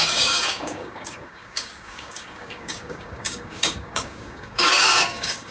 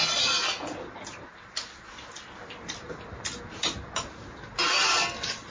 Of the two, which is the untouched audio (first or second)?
second